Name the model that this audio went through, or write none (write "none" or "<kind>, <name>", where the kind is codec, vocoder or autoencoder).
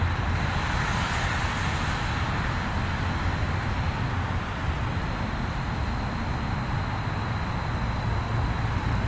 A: none